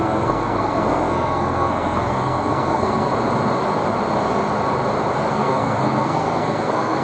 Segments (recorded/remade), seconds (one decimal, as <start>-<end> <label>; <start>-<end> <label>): 0.0-3.1 remade; 3.1-5.3 recorded; 5.3-7.0 remade